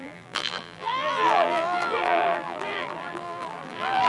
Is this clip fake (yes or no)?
yes